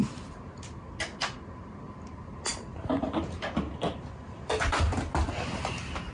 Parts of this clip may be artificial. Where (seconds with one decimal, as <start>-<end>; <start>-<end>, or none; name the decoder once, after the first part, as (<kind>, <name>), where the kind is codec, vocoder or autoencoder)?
2.5-4.8 (vocoder, BigVGAN v2)